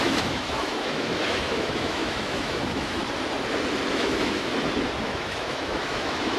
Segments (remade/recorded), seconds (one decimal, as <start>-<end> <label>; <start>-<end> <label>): 0.0-3.0 remade; 3.0-3.9 recorded; 3.9-4.5 remade; 4.5-5.0 recorded; 5.0-6.4 remade